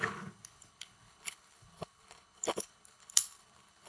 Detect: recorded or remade remade